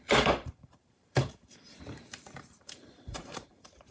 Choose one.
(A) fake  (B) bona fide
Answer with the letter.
A